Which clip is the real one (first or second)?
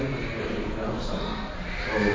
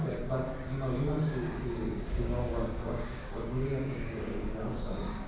first